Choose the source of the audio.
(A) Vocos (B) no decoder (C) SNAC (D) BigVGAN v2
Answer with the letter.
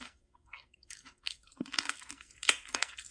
C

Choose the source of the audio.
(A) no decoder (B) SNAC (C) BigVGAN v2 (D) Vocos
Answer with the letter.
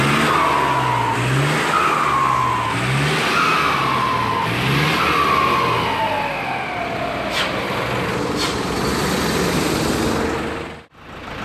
A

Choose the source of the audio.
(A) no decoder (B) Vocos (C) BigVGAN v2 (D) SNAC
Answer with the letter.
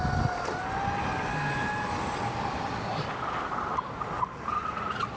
A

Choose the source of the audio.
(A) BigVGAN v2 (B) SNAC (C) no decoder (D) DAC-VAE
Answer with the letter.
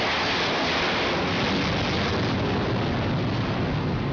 C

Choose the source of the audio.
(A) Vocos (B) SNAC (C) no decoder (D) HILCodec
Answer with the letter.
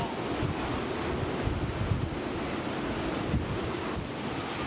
C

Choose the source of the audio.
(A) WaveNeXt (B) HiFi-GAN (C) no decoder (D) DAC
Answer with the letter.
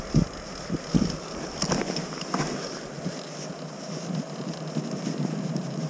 C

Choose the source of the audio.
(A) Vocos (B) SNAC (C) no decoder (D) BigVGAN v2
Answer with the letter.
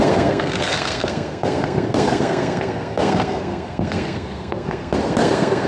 B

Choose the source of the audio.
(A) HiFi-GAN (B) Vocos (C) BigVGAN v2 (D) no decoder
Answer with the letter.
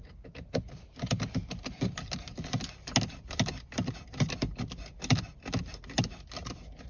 D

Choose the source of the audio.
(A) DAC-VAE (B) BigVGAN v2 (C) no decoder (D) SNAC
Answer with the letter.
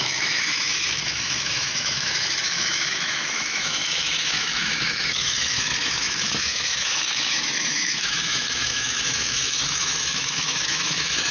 A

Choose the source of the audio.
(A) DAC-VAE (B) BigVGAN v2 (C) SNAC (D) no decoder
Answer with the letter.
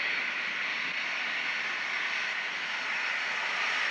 D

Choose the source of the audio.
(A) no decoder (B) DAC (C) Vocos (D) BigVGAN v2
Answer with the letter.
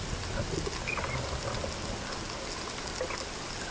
A